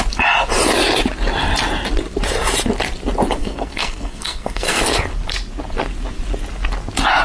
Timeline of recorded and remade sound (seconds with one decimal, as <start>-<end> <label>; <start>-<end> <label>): 0.0-3.4 recorded; 3.4-4.8 remade; 4.8-7.2 recorded